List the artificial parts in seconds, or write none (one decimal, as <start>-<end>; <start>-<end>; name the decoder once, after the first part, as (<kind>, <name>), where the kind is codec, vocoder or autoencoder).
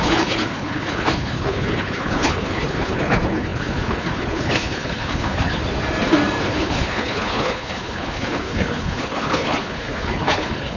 0.0-5.6 (codec, HILCodec); 6.4-10.8